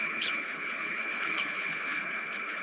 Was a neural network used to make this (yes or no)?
yes